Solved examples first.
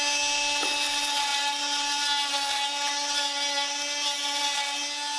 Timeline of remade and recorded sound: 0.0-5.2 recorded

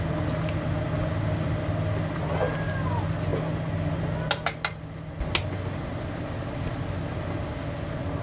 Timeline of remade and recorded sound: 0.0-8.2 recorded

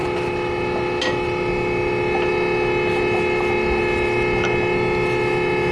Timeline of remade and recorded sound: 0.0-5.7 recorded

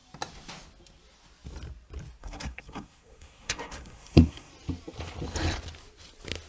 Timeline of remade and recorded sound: 0.0-2.2 recorded; 2.2-4.5 remade; 4.5-6.5 recorded

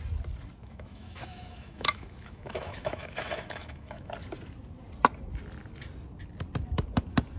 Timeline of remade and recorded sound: 0.0-0.6 recorded; 0.6-4.1 remade; 4.1-7.4 recorded

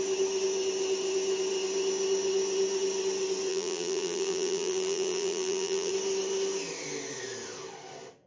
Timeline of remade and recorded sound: 0.0-3.5 recorded; 3.5-5.9 remade; 5.9-8.3 recorded

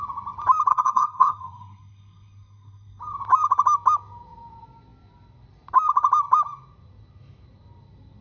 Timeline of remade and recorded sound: 0.0-0.7 recorded; 0.7-3.0 remade; 3.0-8.2 recorded

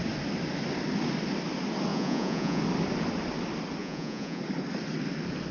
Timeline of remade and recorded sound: 0.0-1.9 recorded; 1.9-2.6 remade; 2.6-3.8 recorded; 3.8-4.4 remade; 4.4-5.5 recorded